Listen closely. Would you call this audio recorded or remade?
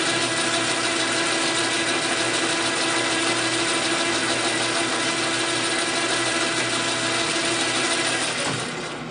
recorded